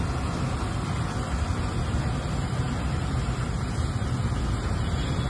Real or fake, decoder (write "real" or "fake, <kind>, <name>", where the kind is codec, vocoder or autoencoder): real